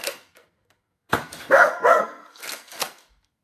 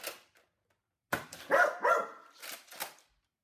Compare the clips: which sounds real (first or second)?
second